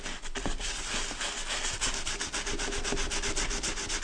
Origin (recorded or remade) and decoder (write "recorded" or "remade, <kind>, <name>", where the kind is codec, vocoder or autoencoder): recorded